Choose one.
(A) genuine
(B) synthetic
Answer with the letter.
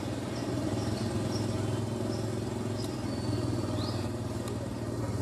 A